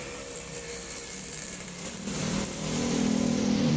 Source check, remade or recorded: remade